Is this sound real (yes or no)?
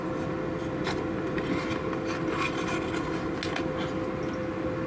yes